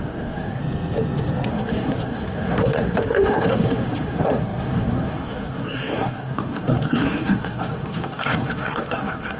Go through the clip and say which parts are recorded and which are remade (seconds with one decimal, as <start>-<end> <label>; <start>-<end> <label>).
0.0-0.6 remade; 0.6-1.5 recorded; 1.5-9.4 remade

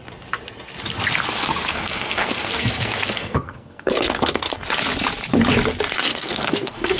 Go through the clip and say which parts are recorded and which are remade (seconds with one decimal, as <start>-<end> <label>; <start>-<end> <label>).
0.0-1.4 recorded; 1.4-4.5 remade; 4.5-6.1 recorded; 6.1-7.0 remade

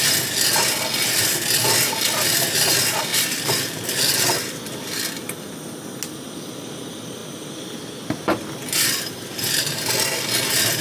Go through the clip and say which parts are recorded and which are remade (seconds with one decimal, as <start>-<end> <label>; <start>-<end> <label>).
0.0-3.1 recorded; 3.1-4.6 remade; 4.6-10.8 recorded

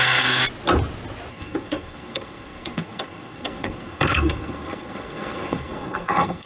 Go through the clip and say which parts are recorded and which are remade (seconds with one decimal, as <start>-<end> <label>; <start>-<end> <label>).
0.0-0.4 remade; 0.4-1.3 recorded; 1.3-6.5 remade

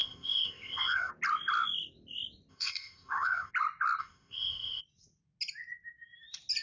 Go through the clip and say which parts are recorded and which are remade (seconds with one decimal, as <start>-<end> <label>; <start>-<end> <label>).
0.0-1.1 remade; 1.1-2.5 recorded; 2.5-3.5 remade; 3.5-4.0 recorded; 4.0-4.8 remade; 4.8-6.6 recorded